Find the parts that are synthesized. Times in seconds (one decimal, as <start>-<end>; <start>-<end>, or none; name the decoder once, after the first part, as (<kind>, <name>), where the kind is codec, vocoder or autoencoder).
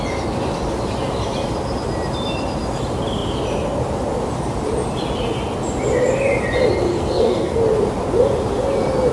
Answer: 6.9-7.6 (codec, SNAC)